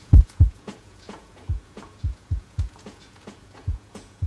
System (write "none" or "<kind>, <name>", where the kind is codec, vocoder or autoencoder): vocoder, Vocos